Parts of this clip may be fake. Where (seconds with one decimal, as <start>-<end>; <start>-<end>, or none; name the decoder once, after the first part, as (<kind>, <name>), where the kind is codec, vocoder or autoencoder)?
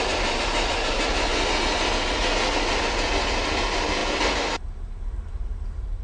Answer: 0.0-1.3 (vocoder, BigVGAN v2); 3.6-4.0; 5.3-6.0